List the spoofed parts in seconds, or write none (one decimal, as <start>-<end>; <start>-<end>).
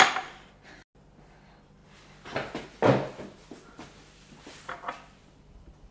none